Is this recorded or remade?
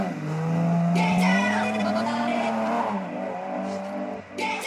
recorded